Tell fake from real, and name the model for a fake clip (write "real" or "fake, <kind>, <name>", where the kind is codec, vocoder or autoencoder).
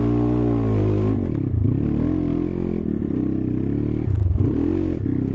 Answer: real